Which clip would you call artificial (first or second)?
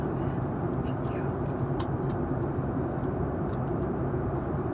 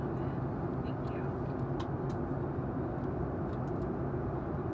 first